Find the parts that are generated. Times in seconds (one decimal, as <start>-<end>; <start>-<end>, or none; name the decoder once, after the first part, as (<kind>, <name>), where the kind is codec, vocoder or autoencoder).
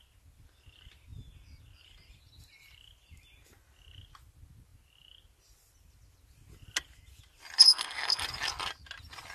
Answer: 7.7-8.2 (codec, SNAC)